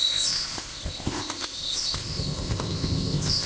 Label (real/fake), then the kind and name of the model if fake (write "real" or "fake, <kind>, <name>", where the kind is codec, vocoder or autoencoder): fake, codec, ZipCodec